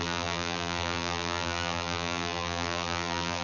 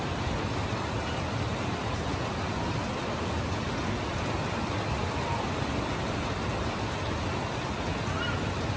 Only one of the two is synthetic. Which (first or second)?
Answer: first